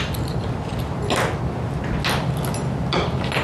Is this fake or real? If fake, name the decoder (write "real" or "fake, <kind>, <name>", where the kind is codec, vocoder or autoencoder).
real